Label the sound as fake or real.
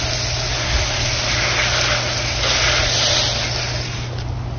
real